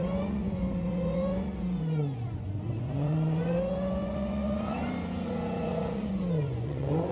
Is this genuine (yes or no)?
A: no